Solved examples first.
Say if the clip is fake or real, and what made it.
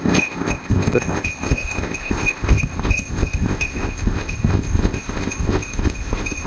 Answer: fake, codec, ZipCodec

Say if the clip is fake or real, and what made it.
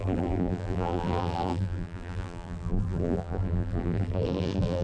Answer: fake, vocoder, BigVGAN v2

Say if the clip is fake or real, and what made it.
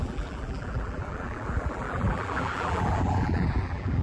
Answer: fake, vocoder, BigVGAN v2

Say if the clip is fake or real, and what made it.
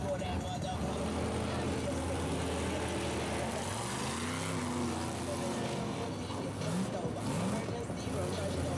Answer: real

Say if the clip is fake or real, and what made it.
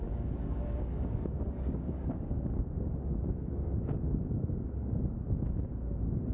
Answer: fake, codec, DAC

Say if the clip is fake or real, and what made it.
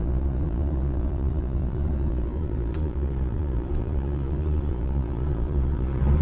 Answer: fake, vocoder, Vocos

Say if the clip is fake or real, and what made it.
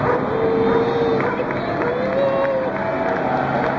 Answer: real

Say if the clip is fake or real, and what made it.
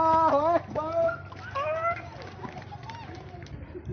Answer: real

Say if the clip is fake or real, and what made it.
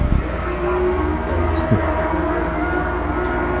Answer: real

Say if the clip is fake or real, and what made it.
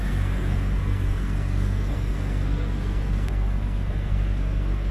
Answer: fake, codec, SNAC